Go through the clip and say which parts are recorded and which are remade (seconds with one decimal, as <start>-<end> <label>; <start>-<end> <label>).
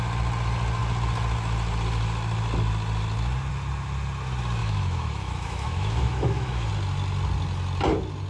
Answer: 0.0-4.6 recorded; 4.6-6.7 remade; 6.7-8.3 recorded